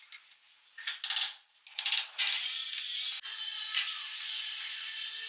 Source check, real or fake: real